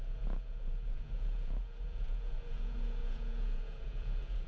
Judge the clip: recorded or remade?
remade